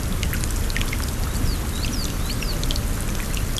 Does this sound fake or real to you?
real